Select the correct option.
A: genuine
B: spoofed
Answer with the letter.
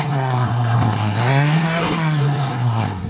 B